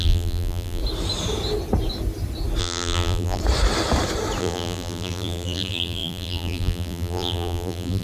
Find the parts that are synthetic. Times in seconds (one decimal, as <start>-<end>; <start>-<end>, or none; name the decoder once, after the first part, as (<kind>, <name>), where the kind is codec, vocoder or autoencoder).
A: 0.0-0.8 (vocoder, BigVGAN v2); 2.6-3.4; 4.4-8.0